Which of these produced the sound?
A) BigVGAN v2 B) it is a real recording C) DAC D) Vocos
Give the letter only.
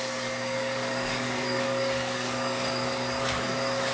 C